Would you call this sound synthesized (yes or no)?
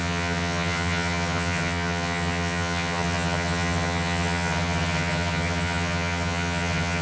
yes